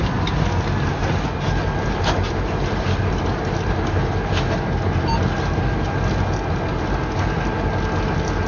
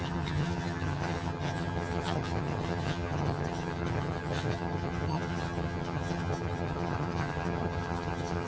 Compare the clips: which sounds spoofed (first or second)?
second